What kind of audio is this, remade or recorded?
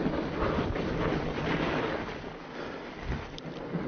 recorded